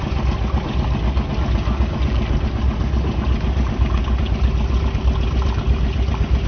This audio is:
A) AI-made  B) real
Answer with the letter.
B